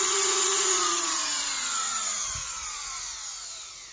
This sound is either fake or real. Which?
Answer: fake